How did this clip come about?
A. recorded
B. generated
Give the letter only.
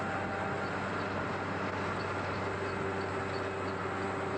A